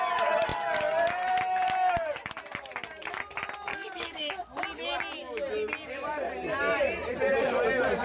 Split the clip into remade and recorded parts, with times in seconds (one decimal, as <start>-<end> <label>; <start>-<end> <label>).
0.0-3.7 recorded; 3.7-4.3 remade; 4.3-8.0 recorded